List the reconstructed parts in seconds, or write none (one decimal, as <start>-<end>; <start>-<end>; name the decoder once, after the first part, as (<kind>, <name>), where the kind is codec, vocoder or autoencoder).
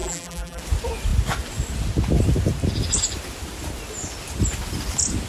0.0-0.6 (vocoder, BigVGAN v2)